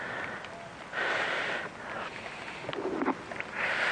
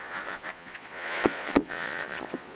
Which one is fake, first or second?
second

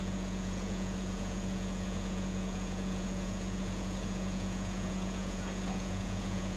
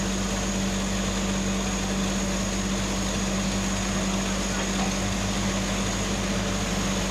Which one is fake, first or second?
first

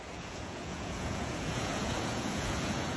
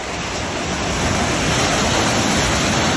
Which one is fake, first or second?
first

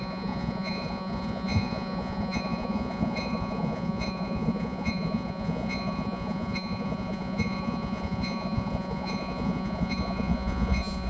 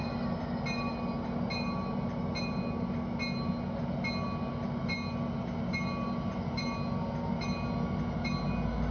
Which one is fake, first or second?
first